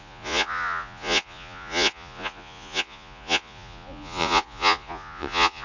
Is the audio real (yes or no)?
no